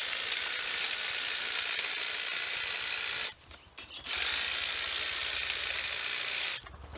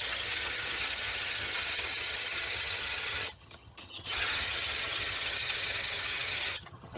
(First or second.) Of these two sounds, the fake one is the second